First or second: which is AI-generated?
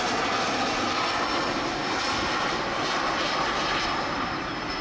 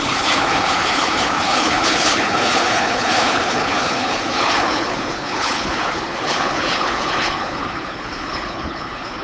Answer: second